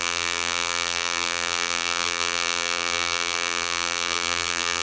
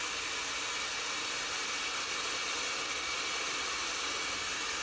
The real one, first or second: second